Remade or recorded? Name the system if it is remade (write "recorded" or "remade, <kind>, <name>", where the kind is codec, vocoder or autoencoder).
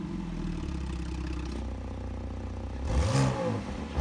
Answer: recorded